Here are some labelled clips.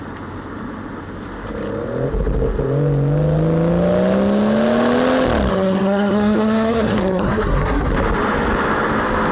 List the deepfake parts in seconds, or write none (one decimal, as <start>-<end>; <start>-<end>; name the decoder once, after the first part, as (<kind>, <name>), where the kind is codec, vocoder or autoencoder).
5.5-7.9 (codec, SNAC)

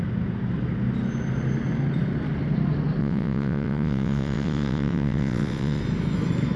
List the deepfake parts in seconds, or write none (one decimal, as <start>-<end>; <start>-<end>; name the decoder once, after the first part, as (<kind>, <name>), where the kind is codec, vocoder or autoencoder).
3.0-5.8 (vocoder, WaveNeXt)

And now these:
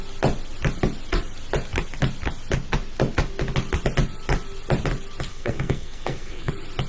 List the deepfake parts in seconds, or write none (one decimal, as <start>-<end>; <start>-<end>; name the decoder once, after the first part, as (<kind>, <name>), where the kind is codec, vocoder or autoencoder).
5.3-6.5 (codec, SNAC)